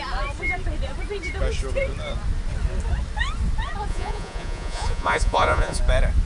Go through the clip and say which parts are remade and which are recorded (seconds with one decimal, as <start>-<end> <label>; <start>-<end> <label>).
0.0-3.9 recorded; 3.9-5.8 remade; 5.8-6.3 recorded